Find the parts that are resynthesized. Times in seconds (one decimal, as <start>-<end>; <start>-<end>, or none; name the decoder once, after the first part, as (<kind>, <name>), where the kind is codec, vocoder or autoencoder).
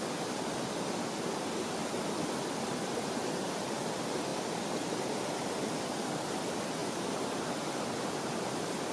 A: none